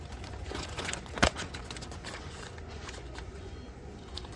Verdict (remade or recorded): remade